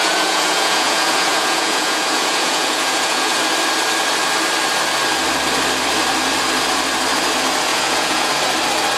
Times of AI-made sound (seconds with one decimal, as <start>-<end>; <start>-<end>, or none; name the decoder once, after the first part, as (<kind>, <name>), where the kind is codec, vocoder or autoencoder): 0.0-3.4 (vocoder, Vocos); 7.7-8.3